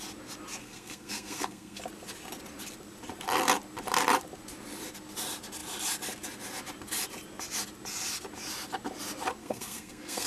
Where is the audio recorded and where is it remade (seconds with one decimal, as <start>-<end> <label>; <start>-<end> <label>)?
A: 0.0-0.6 recorded; 0.6-1.8 remade; 1.8-9.4 recorded; 9.4-10.3 remade